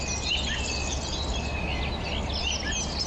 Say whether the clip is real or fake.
real